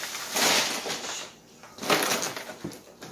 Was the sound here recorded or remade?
recorded